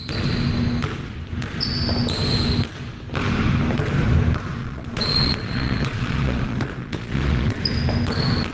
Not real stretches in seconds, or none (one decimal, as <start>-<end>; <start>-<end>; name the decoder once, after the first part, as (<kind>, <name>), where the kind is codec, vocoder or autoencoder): 4.6-7.6 (vocoder, Vocos)

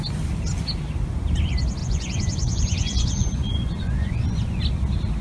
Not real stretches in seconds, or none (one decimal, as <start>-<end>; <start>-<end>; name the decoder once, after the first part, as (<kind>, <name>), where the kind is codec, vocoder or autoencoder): 1.8-4.6 (vocoder, Vocos)

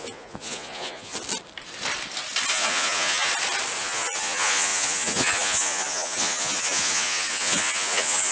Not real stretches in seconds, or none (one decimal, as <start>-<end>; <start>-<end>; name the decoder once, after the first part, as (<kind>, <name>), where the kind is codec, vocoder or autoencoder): 0.0-1.1 (vocoder, Vocos); 2.5-3.3; 3.8-8.3